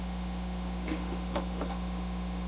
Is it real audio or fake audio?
fake